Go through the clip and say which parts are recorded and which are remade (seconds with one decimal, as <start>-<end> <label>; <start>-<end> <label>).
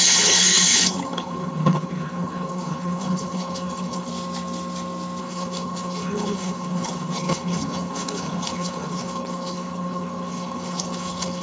0.0-4.1 remade; 4.1-5.2 recorded; 5.2-11.4 remade